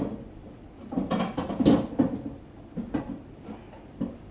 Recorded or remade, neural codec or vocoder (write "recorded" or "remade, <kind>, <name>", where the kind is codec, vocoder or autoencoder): remade, vocoder, BigVGAN v2